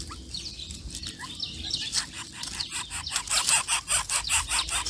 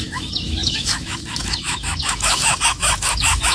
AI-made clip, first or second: second